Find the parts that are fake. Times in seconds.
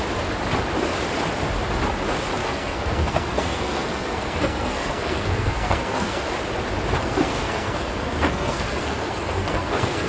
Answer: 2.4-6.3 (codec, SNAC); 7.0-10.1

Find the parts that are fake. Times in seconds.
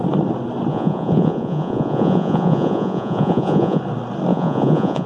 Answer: 0.7-3.8 (vocoder, Vocos); 4.3-5.1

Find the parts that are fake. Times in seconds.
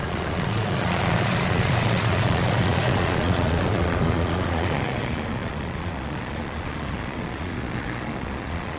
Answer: 0.0-8.8 (vocoder, Vocos)